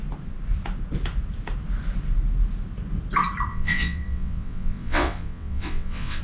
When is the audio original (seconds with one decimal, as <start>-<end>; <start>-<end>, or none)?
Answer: 0.0-3.5